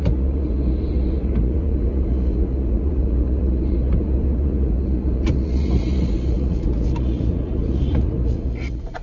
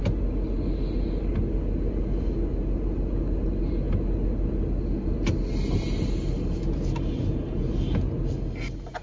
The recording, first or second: second